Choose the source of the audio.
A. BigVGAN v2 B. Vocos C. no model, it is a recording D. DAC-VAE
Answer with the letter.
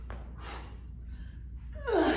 C